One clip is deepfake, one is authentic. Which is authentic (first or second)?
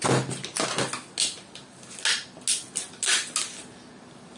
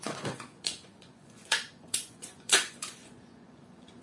first